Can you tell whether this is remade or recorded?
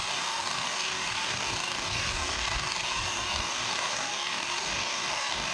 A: remade